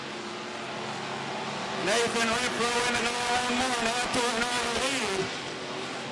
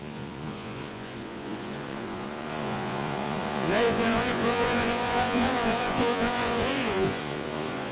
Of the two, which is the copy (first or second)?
second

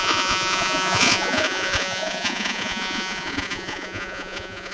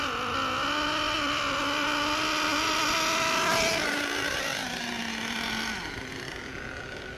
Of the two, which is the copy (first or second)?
first